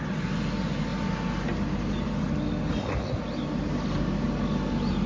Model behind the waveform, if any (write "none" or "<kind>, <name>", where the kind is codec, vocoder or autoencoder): none